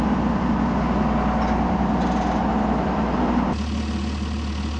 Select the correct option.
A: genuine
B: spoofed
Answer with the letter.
A